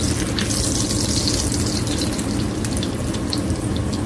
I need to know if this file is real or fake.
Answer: real